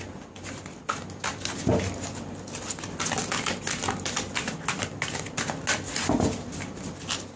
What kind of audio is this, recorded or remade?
recorded